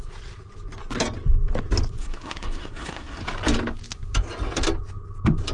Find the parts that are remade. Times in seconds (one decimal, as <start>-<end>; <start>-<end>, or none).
2.0-3.2